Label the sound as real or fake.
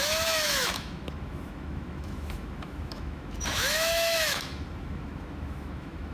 fake